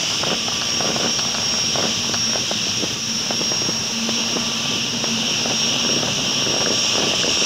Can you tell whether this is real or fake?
real